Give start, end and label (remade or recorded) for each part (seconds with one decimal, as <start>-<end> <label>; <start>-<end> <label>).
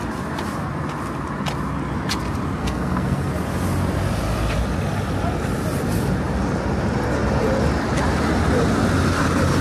0.0-2.6 recorded; 2.6-3.3 remade; 3.3-9.6 recorded